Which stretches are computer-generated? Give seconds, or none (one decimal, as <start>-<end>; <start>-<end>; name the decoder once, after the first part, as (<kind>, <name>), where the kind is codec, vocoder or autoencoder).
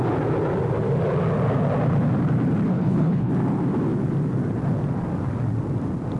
2.7-3.3 (codec, HILCodec)